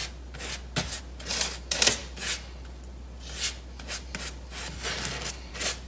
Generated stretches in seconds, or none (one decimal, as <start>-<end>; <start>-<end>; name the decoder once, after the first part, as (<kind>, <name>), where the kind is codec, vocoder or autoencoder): none